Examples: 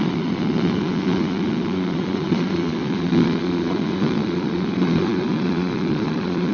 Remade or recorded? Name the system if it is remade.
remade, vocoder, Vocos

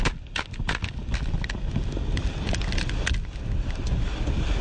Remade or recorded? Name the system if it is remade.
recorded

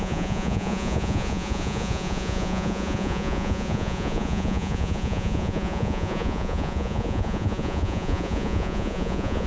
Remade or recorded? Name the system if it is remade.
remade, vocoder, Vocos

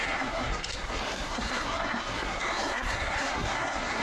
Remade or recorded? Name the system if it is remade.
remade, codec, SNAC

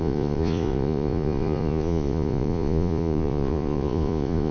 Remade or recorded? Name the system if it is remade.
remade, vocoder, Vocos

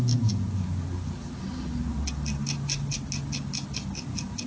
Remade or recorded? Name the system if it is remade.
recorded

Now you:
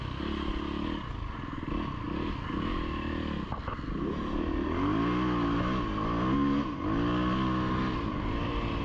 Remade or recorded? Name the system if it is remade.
recorded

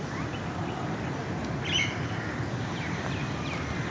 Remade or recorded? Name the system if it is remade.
recorded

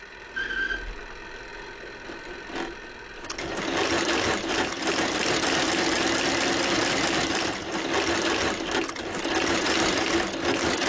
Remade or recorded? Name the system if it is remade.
recorded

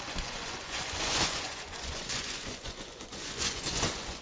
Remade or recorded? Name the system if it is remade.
remade, vocoder, Vocos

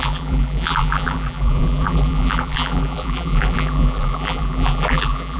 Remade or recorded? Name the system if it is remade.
remade, vocoder, BigVGAN v2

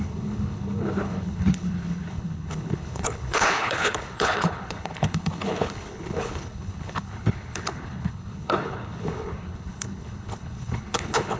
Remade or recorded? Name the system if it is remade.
remade, codec, HILCodec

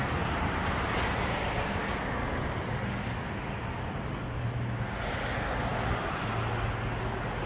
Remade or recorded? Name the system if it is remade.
recorded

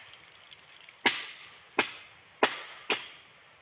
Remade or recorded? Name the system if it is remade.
recorded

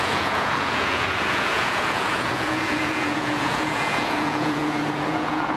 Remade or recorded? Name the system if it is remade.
remade, vocoder, Vocos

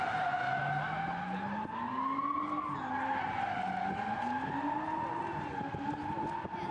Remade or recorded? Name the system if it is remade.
recorded